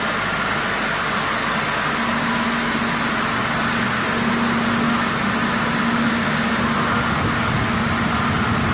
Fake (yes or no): no